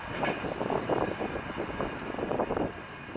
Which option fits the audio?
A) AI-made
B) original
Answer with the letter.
B